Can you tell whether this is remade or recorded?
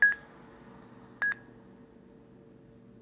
recorded